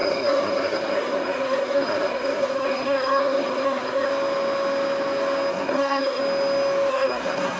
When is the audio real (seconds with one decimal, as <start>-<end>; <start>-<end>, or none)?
4.1-5.5; 6.2-6.9